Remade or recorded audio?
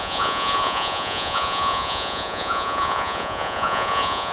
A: remade